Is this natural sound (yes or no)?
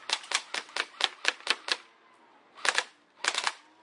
yes